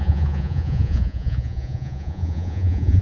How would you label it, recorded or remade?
remade